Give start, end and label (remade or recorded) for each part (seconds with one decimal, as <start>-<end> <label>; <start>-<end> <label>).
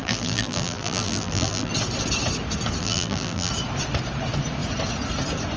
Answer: 0.0-1.7 remade; 1.7-2.8 recorded; 2.8-3.5 remade; 3.5-5.6 recorded